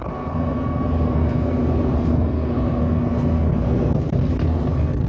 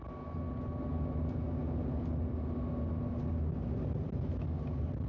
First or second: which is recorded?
second